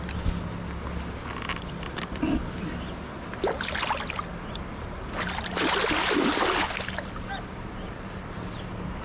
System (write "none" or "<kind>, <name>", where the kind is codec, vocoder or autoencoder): none